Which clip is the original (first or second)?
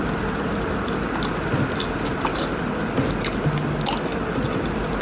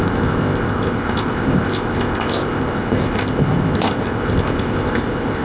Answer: first